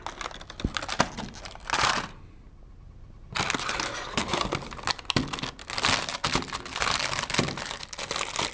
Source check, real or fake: real